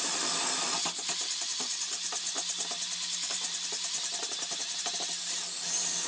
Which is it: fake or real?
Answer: real